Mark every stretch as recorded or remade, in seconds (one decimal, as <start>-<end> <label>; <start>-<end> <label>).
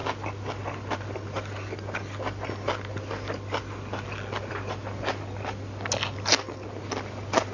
0.0-7.5 recorded